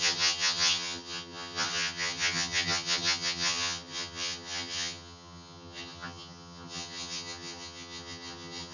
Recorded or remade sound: remade